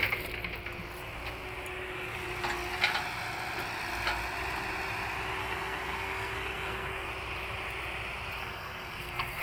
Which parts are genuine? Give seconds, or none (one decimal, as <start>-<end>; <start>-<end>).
0.0-5.4; 7.1-8.4